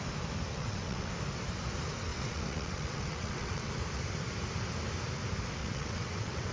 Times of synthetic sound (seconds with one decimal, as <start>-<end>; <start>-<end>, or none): 0.5-1.1; 2.1-3.7; 5.6-6.5